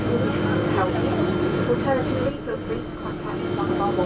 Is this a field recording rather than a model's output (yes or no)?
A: yes